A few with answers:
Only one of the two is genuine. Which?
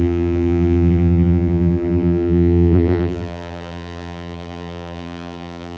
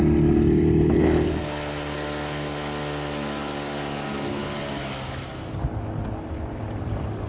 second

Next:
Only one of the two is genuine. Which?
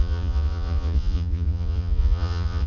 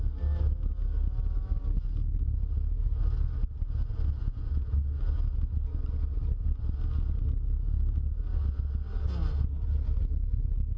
second